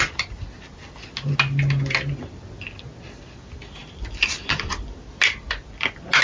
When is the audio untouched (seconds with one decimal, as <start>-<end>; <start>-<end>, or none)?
0.0-6.2